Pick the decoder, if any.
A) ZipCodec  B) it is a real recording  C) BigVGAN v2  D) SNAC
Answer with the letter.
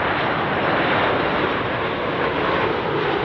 B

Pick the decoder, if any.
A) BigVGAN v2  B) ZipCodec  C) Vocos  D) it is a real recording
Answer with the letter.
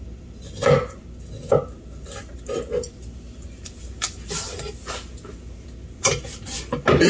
D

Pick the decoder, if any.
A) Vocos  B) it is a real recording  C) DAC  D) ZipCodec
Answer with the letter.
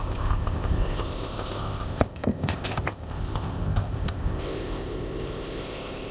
D